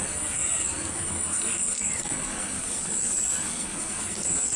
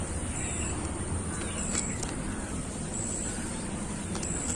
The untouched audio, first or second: second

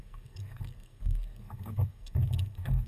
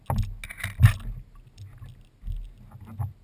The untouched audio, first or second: second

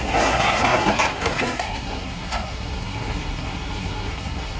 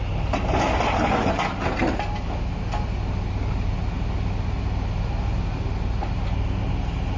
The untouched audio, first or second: second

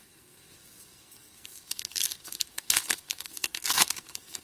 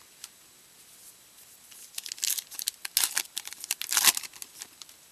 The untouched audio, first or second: second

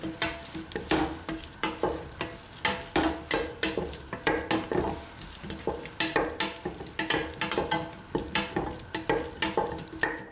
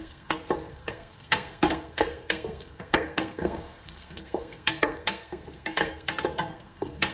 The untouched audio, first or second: first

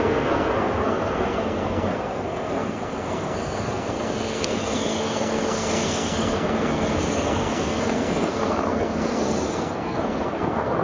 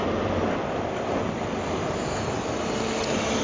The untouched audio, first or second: second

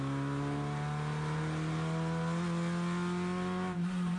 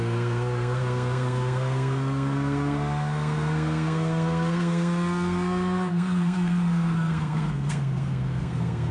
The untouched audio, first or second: first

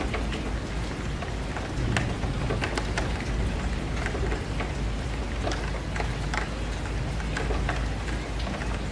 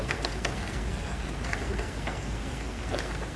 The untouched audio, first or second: first